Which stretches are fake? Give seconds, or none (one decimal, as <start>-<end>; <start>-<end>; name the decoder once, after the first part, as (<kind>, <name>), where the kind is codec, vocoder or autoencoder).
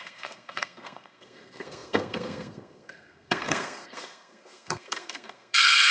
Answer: 0.0-5.9 (codec, SNAC)